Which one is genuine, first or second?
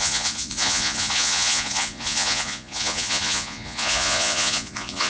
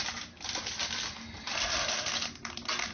second